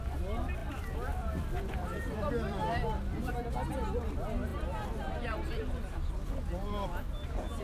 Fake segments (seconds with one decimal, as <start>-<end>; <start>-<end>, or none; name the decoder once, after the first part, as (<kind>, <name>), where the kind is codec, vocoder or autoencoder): 0.6-3.3 (vocoder, BigVGAN v2)

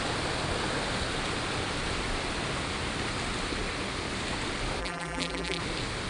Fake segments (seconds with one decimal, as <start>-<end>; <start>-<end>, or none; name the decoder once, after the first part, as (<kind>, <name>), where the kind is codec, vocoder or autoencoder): 4.8-5.6 (vocoder, BigVGAN v2)